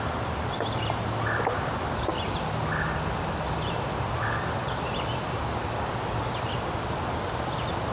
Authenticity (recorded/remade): recorded